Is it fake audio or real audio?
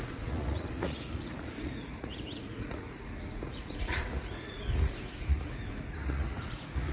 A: fake